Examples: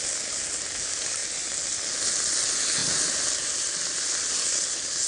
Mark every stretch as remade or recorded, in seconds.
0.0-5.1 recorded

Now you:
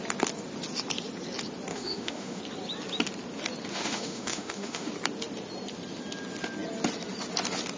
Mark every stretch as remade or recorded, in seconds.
0.0-1.7 recorded; 1.7-2.4 remade; 2.4-3.7 recorded; 3.7-4.9 remade; 4.9-7.8 recorded